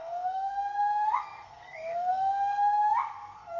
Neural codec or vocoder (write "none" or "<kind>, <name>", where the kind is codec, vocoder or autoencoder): codec, SNAC